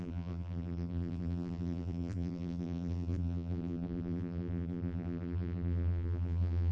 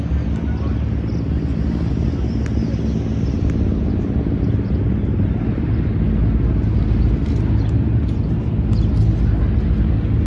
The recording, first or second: second